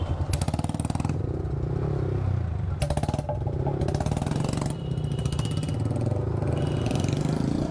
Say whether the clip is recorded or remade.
recorded